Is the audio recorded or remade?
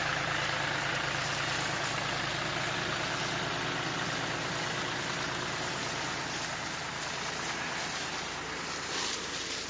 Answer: recorded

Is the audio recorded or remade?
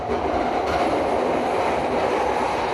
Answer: recorded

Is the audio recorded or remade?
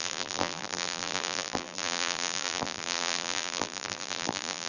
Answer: remade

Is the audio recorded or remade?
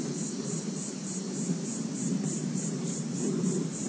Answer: remade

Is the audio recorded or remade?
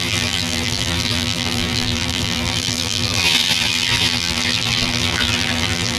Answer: remade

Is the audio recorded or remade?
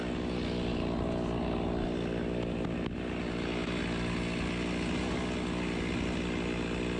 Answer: recorded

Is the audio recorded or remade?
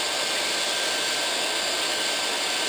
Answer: recorded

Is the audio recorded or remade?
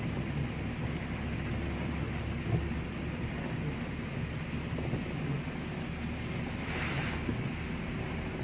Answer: recorded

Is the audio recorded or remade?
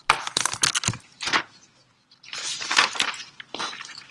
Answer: recorded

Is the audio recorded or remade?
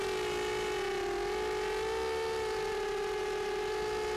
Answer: recorded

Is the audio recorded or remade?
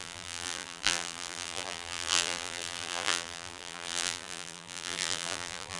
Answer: remade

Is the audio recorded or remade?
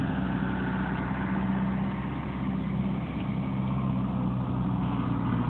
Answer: recorded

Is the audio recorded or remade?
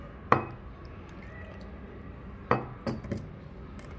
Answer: recorded